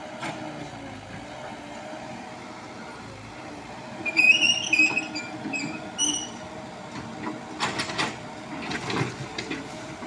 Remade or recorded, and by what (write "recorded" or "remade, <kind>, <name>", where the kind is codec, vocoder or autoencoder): recorded